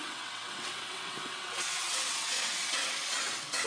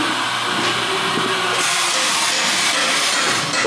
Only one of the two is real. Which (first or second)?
second